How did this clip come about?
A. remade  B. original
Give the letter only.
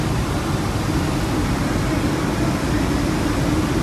B